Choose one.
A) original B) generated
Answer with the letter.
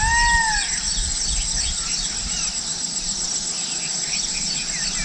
A